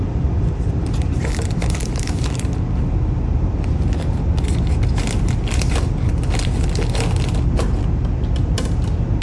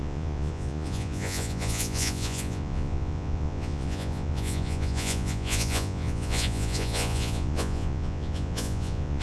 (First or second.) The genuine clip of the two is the first